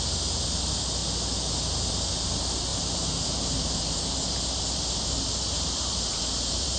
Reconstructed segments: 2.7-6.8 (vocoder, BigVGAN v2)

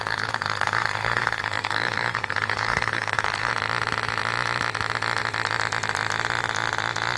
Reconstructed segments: 0.0-3.5 (codec, SNAC)

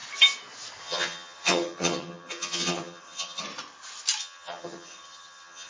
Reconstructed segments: 0.8-3.4 (vocoder, HiFi-GAN); 4.2-5.7

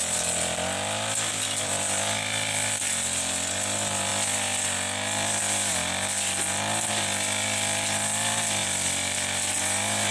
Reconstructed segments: 8.6-9.6 (vocoder, BigVGAN v2)

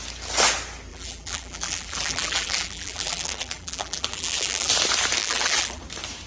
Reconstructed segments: 0.9-4.7 (vocoder, BigVGAN v2); 5.2-5.8